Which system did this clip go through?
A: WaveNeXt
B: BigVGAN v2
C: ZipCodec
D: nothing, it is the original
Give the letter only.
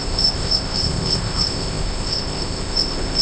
C